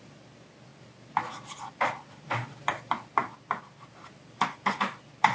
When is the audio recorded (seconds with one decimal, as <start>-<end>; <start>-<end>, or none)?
0.0-5.3